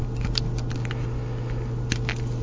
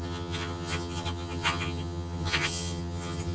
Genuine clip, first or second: first